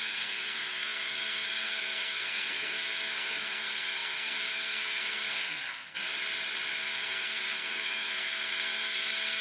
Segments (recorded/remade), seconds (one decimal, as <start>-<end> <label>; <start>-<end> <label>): 0.0-6.0 remade; 6.0-6.8 recorded; 6.8-9.4 remade